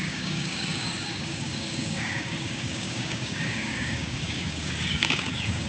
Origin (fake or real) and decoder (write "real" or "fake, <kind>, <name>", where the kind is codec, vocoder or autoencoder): fake, codec, DAC